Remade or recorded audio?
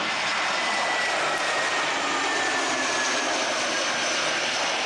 recorded